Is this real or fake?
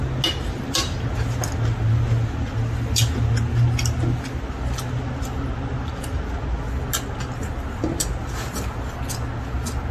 real